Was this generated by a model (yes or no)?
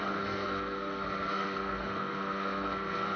yes